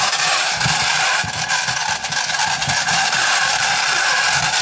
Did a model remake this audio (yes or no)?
no